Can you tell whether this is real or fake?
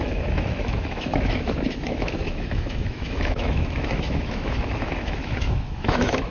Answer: fake